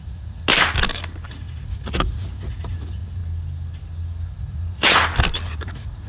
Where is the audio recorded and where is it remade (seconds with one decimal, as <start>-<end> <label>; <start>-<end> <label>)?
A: 0.0-0.4 remade; 0.4-1.3 recorded; 1.3-3.2 remade; 3.2-4.4 recorded; 4.4-5.0 remade; 5.0-5.5 recorded; 5.5-6.1 remade